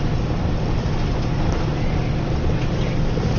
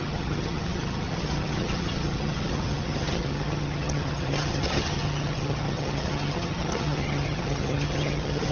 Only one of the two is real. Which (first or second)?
first